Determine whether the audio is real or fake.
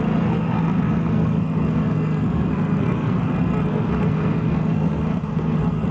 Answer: fake